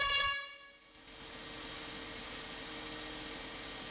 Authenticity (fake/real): real